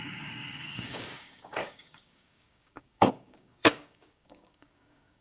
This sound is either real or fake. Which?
fake